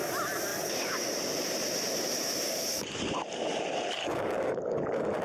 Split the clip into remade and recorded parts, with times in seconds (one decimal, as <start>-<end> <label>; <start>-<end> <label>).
0.0-4.0 recorded; 4.0-5.2 remade